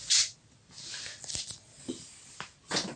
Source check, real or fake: real